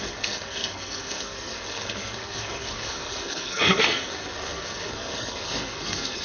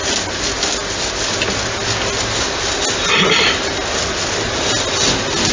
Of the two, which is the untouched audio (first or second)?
second